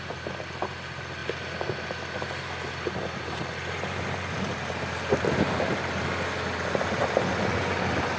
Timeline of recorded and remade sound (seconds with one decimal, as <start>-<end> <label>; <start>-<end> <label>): 0.0-8.2 recorded